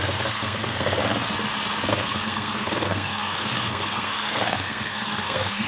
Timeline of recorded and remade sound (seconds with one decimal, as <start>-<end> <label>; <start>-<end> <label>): 0.0-1.0 remade; 1.0-1.9 recorded; 1.9-5.7 remade